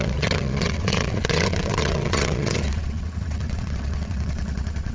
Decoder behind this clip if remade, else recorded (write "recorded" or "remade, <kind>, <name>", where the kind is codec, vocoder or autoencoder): remade, vocoder, WaveNeXt